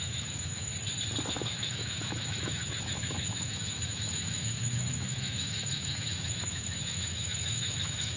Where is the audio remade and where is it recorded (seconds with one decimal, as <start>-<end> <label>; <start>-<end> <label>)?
0.0-0.7 remade; 0.7-1.3 recorded; 1.3-8.2 remade

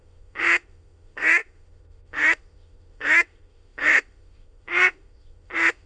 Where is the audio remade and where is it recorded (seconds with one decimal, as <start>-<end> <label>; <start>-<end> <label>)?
0.0-5.9 remade

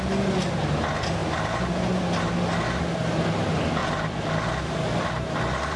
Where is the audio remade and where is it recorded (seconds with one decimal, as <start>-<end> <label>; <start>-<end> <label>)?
0.0-5.8 recorded

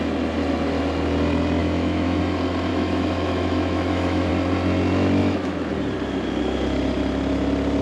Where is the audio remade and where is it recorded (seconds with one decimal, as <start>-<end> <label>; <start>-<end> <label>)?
0.0-1.6 recorded; 1.6-2.2 remade; 2.2-2.7 recorded; 2.7-4.3 remade; 4.3-5.2 recorded; 5.2-5.7 remade; 5.7-7.8 recorded

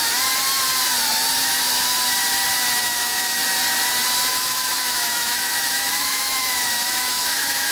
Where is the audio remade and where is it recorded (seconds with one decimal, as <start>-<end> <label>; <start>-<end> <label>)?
0.0-2.8 recorded; 2.8-3.4 remade; 3.4-4.3 recorded; 4.3-7.7 remade

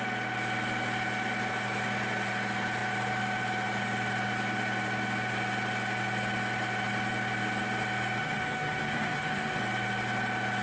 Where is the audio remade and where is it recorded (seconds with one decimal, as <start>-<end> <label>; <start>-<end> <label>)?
0.0-8.2 recorded; 8.2-9.6 remade; 9.6-10.6 recorded

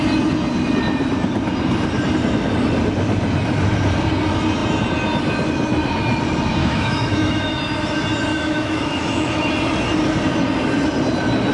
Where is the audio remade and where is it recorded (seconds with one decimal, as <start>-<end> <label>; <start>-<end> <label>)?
0.0-6.6 recorded; 6.6-7.6 remade; 7.6-8.3 recorded; 8.3-9.5 remade; 9.5-11.5 recorded

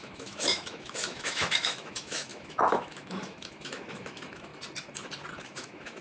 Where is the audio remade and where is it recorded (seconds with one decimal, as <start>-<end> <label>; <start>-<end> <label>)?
0.0-4.5 remade; 4.5-5.4 recorded; 5.4-6.0 remade